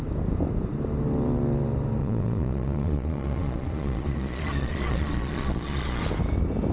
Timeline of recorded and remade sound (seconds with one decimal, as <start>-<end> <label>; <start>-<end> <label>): 0.0-2.0 recorded; 2.0-6.0 remade; 6.0-6.7 recorded